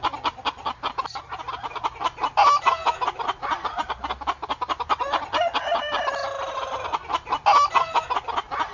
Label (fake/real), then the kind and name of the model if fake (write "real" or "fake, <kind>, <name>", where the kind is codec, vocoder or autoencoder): real